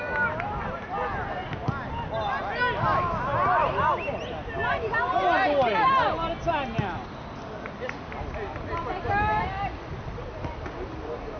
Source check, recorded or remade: recorded